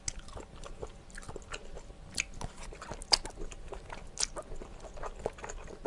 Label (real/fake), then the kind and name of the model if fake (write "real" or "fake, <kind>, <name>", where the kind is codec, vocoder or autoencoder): real